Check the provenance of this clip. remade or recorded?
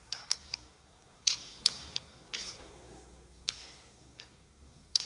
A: remade